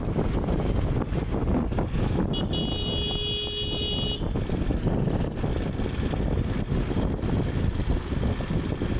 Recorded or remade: recorded